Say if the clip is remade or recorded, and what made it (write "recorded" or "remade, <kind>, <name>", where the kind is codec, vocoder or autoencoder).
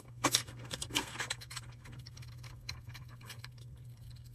remade, codec, SNAC